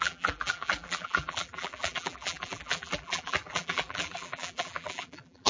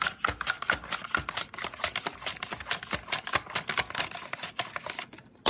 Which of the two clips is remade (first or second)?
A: first